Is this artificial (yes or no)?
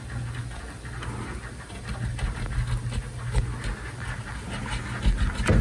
no